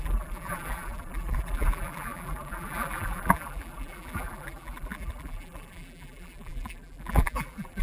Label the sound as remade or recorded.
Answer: remade